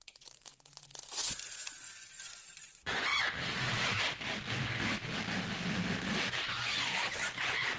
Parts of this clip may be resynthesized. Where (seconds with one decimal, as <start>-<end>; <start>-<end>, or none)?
0.0-3.1; 6.3-7.8